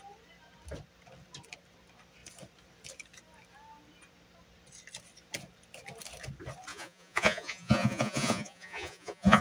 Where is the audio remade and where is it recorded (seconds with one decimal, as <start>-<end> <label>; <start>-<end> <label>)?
0.0-6.7 recorded; 6.7-9.4 remade